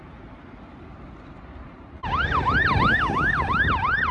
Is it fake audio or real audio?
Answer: real